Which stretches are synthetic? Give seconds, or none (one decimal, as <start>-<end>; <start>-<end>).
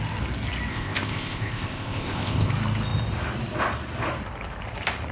0.7-2.5